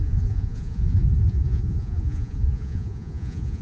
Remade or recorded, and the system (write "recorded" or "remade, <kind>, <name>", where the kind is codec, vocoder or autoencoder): remade, vocoder, Vocos